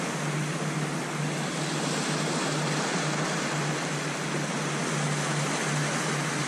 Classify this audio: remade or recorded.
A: recorded